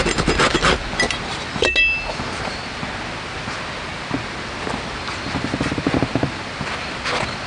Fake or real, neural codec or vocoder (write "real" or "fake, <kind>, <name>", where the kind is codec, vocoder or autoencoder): real